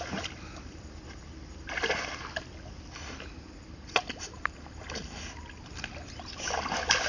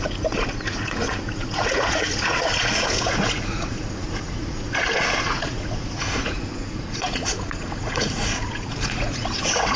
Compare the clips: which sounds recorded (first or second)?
first